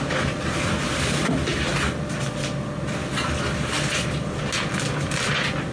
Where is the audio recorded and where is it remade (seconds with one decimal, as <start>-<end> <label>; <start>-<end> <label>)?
0.0-5.7 recorded